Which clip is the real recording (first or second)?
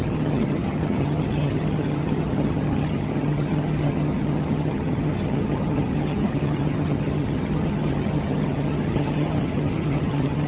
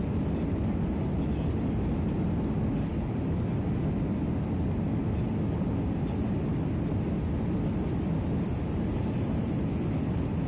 second